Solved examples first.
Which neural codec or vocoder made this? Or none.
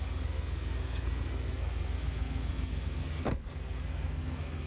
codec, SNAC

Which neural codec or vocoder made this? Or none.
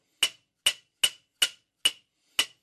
none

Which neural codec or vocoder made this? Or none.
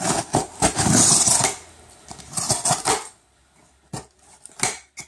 none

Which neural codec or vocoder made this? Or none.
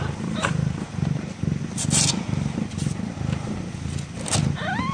none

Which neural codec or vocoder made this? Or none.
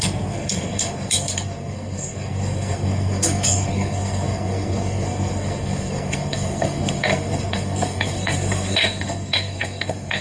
codec, SNAC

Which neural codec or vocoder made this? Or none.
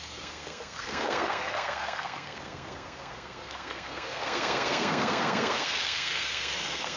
codec, SNAC